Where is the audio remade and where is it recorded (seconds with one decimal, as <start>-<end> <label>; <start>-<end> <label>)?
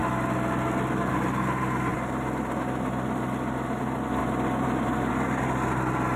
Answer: 0.0-4.2 recorded; 4.2-5.1 remade; 5.1-6.2 recorded